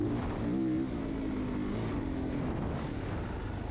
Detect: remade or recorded recorded